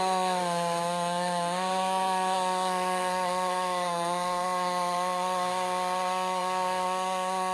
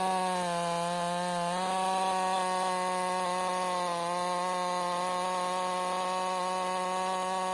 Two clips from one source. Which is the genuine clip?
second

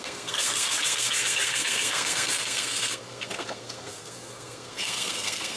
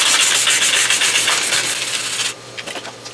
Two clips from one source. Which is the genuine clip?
second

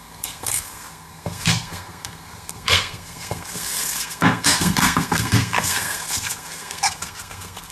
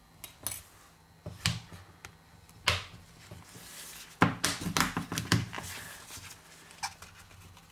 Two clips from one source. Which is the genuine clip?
second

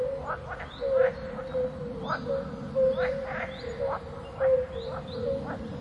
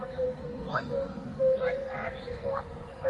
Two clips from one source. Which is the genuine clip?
first